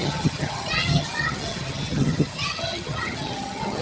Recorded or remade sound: remade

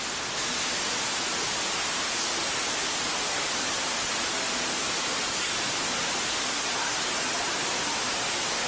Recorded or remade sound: recorded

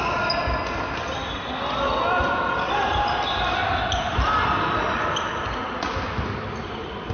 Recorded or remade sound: recorded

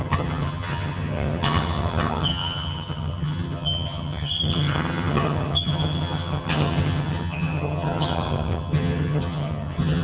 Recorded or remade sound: remade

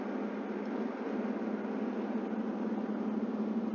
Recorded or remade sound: recorded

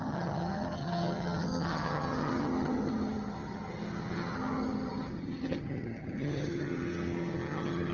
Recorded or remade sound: remade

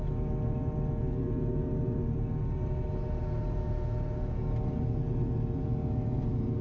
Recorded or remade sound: recorded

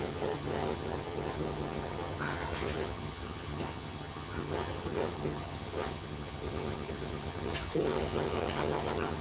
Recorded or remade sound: remade